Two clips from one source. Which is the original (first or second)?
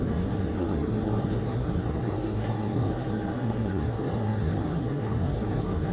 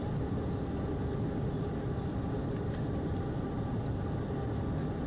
second